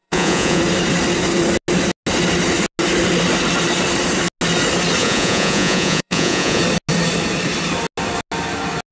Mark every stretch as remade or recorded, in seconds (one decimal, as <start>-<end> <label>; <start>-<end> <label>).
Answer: 0.0-0.6 remade; 0.6-5.0 recorded; 5.0-6.6 remade; 6.6-8.9 recorded